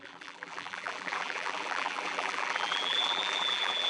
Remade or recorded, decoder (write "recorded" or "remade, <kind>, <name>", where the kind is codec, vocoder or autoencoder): remade, vocoder, BigVGAN v2